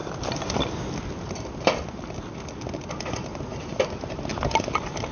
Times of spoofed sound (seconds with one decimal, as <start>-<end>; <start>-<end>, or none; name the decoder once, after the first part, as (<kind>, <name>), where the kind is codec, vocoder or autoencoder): none